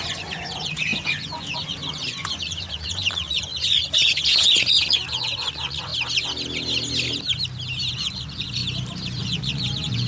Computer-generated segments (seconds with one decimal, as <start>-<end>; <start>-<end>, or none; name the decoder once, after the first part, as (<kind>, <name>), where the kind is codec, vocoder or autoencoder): 0.0-5.9 (vocoder, Vocos); 7.9-8.6; 9.2-10.1